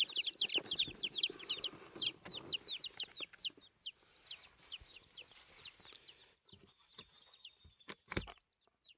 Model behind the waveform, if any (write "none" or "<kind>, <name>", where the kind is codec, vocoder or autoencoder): none